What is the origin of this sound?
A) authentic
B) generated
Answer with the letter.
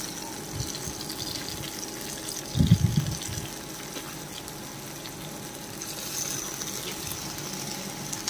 A